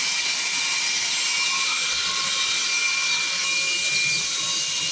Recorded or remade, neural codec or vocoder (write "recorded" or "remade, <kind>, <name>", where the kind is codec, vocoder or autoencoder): recorded